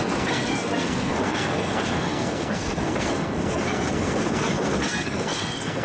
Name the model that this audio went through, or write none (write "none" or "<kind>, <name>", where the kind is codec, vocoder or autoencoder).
codec, SNAC